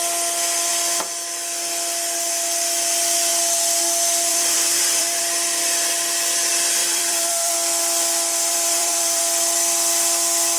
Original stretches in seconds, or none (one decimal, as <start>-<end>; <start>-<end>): 0.0-4.3; 5.2-6.8; 7.5-8.5; 9.2-10.6